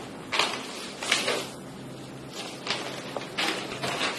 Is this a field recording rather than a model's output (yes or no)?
yes